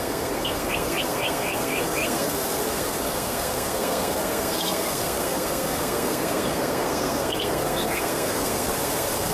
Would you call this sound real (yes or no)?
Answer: no